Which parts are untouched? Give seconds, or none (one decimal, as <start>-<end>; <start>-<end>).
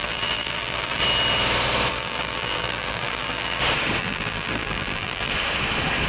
1.0-1.9; 3.6-4.0; 5.3-6.1